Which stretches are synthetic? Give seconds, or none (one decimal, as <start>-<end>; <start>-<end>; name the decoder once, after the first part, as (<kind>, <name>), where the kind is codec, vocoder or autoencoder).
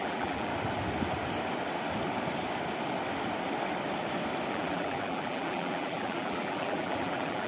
0.0-0.5 (vocoder, BigVGAN v2); 4.5-7.5